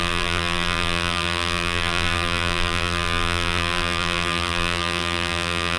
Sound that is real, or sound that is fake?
fake